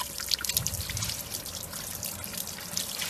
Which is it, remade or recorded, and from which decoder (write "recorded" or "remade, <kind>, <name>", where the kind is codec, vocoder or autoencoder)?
recorded